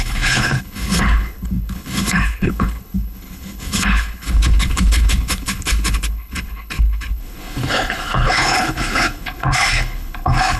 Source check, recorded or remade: remade